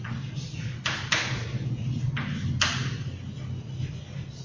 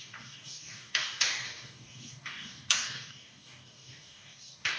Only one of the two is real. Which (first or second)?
first